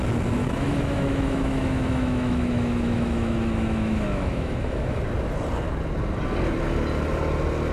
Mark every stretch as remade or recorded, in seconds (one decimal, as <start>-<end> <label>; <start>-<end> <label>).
0.0-0.4 recorded; 0.4-5.0 remade; 5.0-7.7 recorded